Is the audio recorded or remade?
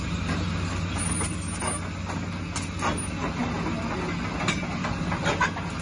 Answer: recorded